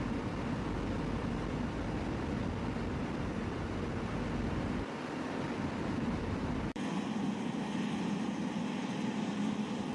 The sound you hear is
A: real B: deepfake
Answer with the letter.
B